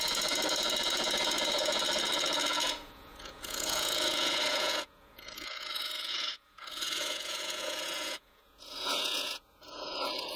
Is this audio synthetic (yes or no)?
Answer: yes